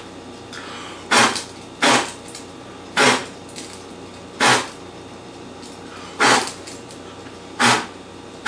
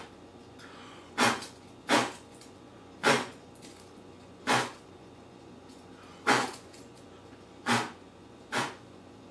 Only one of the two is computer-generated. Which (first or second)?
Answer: second